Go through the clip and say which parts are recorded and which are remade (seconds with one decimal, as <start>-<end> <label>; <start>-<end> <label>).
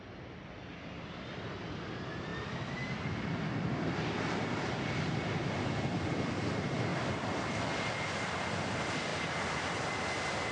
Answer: 0.0-2.3 remade; 2.3-6.0 recorded; 6.0-10.5 remade